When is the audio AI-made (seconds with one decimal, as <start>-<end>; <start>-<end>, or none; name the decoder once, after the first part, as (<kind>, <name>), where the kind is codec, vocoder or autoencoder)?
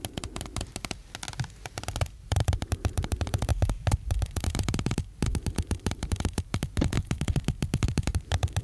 0.0-1.0 (vocoder, BigVGAN v2); 2.1-8.6